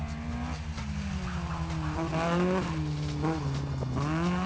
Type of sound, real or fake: real